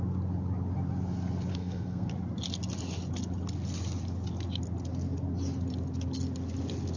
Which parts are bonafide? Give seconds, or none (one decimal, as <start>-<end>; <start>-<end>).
0.0-1.5; 2.1-7.0